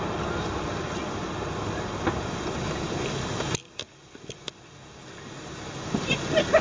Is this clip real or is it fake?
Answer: real